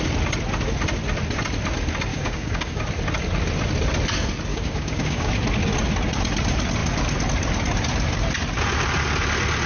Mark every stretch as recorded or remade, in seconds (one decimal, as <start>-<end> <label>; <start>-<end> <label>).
0.0-2.1 recorded; 2.1-2.8 remade; 2.8-4.5 recorded; 4.5-5.3 remade; 5.3-9.7 recorded